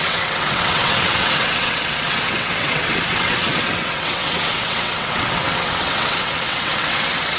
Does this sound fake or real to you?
fake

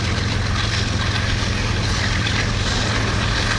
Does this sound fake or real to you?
real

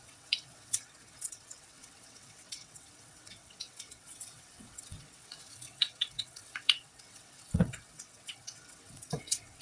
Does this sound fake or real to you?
fake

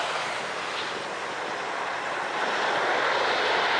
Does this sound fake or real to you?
real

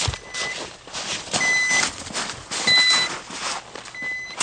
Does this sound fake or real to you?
real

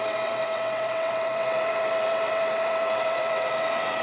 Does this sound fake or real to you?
fake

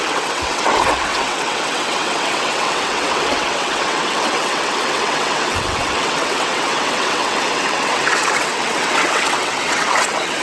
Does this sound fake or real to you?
fake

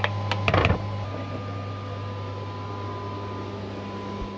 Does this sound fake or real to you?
real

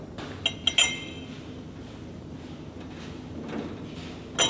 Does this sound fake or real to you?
real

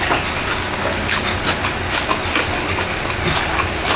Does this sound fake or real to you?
real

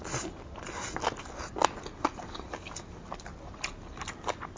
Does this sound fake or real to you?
real